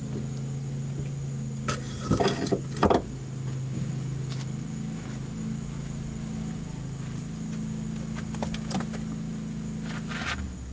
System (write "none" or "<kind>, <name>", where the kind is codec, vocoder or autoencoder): none